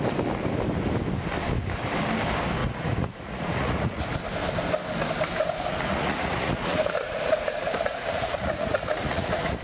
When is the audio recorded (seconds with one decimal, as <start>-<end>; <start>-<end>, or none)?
0.0-2.6; 4.0-5.9